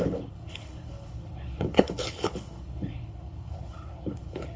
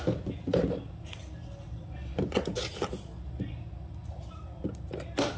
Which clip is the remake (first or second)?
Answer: first